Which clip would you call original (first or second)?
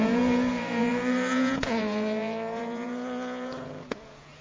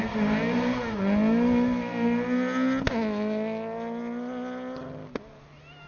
second